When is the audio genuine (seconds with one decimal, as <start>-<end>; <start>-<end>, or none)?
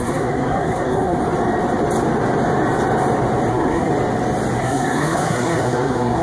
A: 1.2-3.5; 3.9-4.6